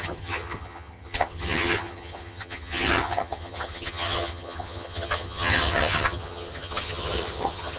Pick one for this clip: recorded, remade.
remade